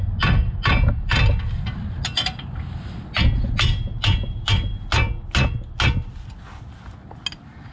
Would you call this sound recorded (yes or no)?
yes